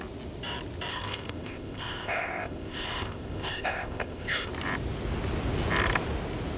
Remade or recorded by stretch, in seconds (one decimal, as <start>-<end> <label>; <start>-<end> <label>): 0.0-0.9 recorded; 0.9-4.5 remade; 4.5-6.6 recorded